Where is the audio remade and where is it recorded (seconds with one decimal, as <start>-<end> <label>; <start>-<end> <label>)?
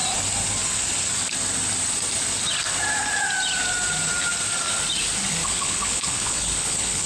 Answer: 0.0-5.4 recorded; 5.4-7.1 remade